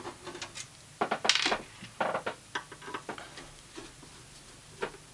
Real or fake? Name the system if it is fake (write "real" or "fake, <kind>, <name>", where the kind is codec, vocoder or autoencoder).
real